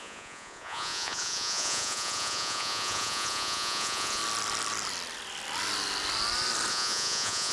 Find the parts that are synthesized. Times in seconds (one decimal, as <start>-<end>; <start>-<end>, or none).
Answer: 0.0-4.2; 6.7-7.5